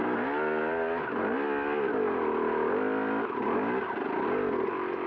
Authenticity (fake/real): real